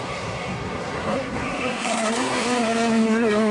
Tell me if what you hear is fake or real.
fake